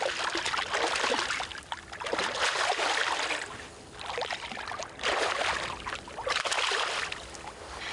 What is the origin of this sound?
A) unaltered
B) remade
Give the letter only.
A